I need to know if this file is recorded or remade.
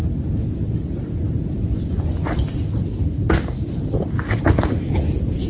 recorded